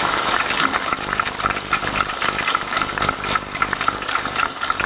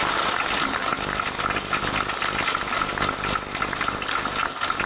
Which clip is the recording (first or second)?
second